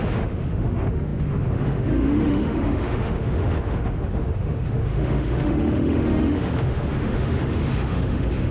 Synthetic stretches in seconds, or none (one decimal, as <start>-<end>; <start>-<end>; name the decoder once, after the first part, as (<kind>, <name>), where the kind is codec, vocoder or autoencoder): 0.0-8.5 (autoencoder, DAC-VAE)